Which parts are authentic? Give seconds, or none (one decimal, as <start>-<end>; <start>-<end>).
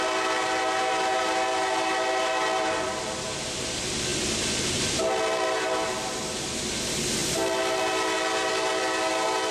0.0-9.5